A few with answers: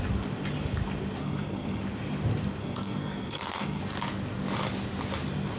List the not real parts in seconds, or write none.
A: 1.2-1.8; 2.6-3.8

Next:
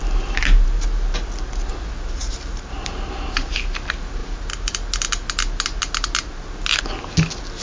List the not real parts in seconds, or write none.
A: 2.2-3.5

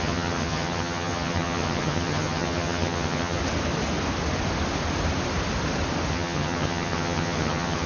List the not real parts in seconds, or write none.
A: 0.0-3.4; 6.1-7.9

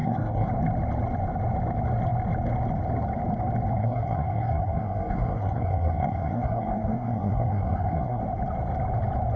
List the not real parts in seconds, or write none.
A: 0.0-0.5; 3.8-8.2

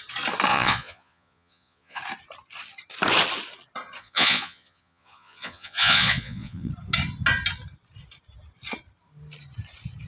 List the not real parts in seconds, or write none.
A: 0.5-2.0; 4.0-6.7

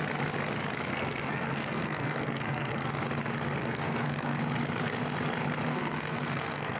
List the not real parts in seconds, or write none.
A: 0.9-2.9; 3.6-4.4; 5.7-6.8

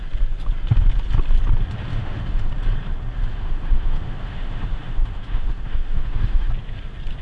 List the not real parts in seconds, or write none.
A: 1.9-2.5; 3.3-6.5

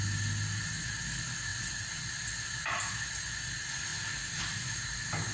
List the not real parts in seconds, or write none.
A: 1.5-2.1